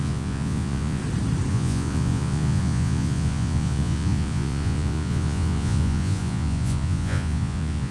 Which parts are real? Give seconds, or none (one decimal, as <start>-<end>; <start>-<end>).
1.0-1.5